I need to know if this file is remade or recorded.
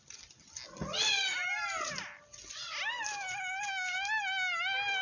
recorded